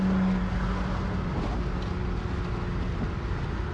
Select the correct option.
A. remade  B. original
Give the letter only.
B